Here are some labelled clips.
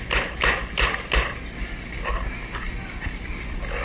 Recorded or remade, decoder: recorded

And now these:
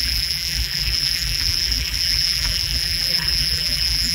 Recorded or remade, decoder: remade, vocoder, BigVGAN v2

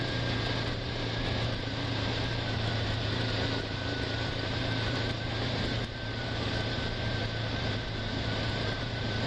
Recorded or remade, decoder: remade, vocoder, BigVGAN v2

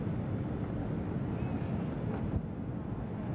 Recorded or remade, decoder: recorded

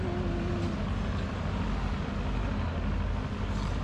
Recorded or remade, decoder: recorded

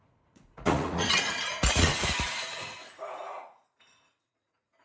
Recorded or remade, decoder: remade, vocoder, Vocos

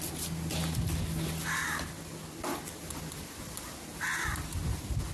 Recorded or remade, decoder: recorded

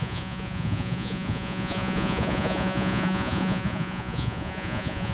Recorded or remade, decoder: remade, vocoder, Vocos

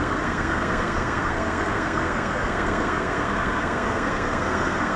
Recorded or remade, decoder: remade, codec, SNAC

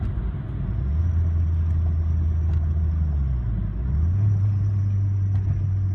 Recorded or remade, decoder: recorded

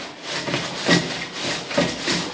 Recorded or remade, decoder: recorded